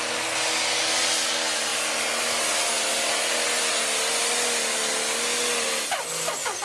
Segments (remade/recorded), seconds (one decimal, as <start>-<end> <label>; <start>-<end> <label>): 0.0-6.6 recorded